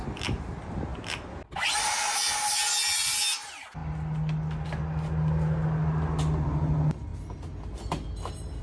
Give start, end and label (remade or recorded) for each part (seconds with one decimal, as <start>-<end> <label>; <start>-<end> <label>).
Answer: 0.0-8.6 recorded